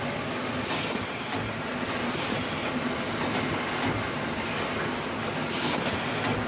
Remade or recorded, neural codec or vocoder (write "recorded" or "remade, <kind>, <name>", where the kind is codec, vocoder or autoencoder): recorded